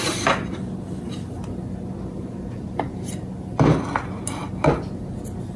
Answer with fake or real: real